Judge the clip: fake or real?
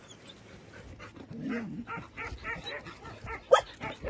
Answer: real